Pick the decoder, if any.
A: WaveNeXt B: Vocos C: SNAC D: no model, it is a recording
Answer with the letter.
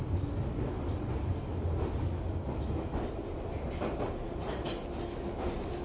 D